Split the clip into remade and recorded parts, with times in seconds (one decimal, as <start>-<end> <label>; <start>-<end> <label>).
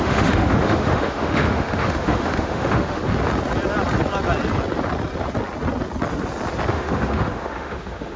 0.0-3.0 remade; 3.0-6.7 recorded; 6.7-8.2 remade